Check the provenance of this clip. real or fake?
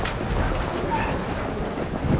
real